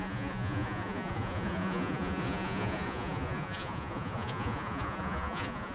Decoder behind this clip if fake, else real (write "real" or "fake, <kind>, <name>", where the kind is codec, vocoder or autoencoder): fake, vocoder, Vocos